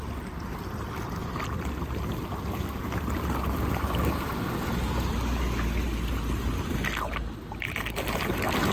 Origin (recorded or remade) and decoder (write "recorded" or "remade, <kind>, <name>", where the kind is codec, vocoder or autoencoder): recorded